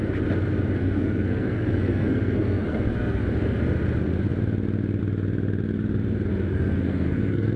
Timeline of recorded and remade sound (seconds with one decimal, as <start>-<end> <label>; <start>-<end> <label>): 0.0-0.8 recorded; 0.8-3.2 remade; 3.2-6.3 recorded; 6.3-7.6 remade